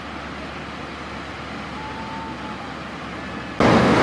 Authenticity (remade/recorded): recorded